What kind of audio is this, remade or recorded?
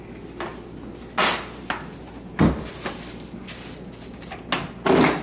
recorded